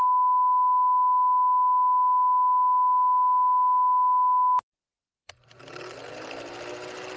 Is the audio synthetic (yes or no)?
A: no